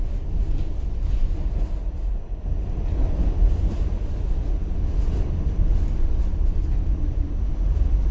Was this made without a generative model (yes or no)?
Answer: yes